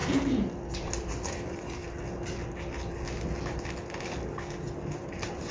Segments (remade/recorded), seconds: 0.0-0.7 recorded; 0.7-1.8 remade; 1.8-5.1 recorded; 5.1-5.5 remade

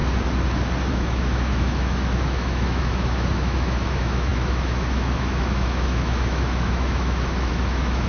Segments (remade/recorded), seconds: 0.0-0.9 recorded; 0.9-8.1 remade